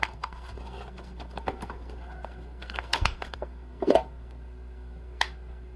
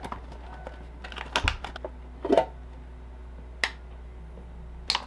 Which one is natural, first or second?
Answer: second